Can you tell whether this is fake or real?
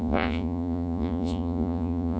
fake